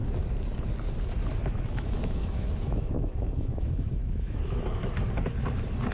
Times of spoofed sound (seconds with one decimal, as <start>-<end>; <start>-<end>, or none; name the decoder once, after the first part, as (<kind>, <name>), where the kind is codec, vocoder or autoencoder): 1.4-4.9 (autoencoder, DAC-VAE)